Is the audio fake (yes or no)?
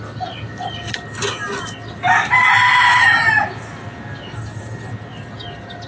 no